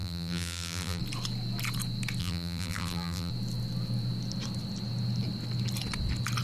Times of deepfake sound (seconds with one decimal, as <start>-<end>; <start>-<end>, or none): 0.0-1.0; 2.2-3.3